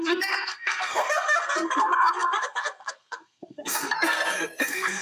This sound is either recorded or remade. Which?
remade